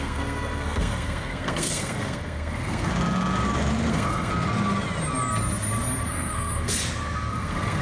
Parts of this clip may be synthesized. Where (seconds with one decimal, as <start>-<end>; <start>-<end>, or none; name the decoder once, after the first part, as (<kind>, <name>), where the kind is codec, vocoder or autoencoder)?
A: 0.0-2.9 (codec, SNAC); 3.9-4.3; 6.1-6.8; 7.3-7.8